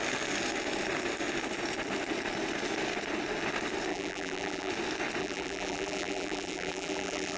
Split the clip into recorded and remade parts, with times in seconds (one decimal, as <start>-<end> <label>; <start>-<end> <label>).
0.0-3.9 recorded; 3.9-4.7 remade; 4.7-5.2 recorded; 5.2-7.4 remade